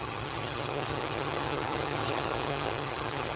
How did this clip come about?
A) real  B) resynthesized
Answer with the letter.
B